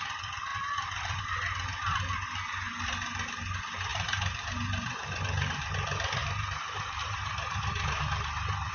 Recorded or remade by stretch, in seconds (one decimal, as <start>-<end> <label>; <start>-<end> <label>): 0.0-3.9 recorded; 3.9-5.6 remade; 5.6-6.2 recorded; 6.2-8.0 remade; 8.0-8.7 recorded